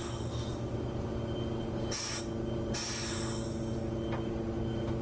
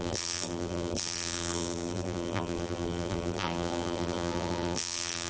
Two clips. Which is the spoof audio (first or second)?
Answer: second